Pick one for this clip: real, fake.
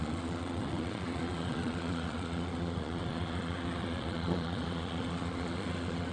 fake